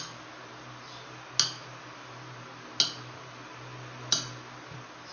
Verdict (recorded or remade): recorded